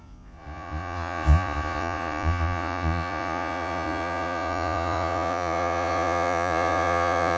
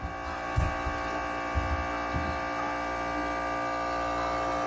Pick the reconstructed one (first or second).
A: first